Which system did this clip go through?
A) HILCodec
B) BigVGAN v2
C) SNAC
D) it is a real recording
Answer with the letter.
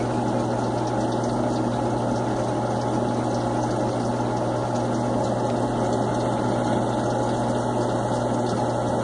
D